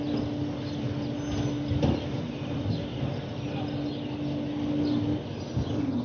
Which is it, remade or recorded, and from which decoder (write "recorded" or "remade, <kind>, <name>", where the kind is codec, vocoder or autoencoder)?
recorded